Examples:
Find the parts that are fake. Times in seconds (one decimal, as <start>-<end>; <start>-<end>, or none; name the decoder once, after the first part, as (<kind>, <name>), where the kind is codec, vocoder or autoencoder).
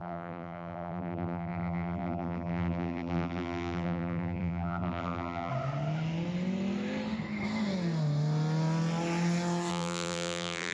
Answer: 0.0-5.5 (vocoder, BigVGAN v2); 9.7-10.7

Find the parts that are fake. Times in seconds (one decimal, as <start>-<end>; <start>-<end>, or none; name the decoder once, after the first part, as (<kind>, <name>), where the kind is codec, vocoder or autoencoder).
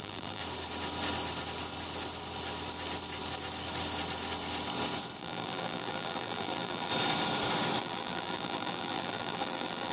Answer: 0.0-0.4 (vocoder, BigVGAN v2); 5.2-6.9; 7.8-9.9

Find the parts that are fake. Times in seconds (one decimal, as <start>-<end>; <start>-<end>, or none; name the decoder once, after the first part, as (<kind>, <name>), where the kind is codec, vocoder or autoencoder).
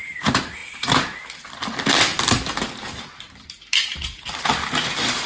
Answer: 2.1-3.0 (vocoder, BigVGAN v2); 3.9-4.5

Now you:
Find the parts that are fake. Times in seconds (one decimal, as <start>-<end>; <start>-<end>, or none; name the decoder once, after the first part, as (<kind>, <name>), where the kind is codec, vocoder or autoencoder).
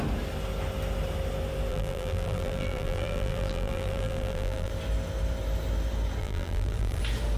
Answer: 1.7-4.7 (vocoder, BigVGAN v2); 6.2-7.0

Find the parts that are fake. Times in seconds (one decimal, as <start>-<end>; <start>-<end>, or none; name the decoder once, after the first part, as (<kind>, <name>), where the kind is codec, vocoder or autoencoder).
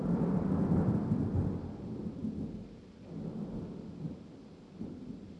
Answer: none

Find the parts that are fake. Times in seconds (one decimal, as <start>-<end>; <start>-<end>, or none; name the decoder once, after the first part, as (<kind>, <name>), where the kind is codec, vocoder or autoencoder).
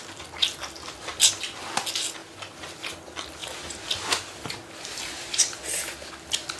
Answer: 3.4-6.1 (vocoder, BigVGAN v2)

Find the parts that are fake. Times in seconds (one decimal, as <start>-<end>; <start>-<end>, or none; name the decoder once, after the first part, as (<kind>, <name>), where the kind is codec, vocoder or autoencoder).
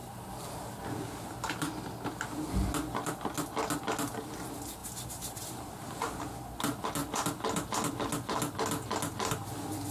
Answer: 4.8-6.2 (vocoder, BigVGAN v2)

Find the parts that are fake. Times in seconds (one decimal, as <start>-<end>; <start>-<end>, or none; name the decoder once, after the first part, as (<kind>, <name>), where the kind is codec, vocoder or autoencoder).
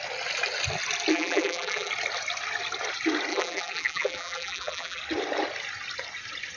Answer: 1.1-1.9 (vocoder, BigVGAN v2); 3.3-5.0